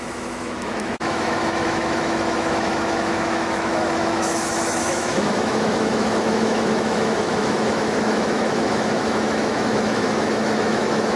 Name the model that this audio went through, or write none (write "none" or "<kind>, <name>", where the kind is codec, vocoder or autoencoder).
autoencoder, DAC-VAE